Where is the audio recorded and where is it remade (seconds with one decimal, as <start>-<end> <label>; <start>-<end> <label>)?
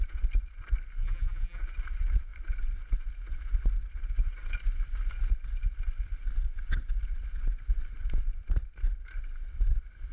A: 0.0-1.0 recorded; 1.0-1.6 remade; 1.6-10.1 recorded